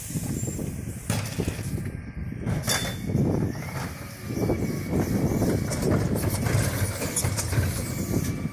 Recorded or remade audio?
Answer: recorded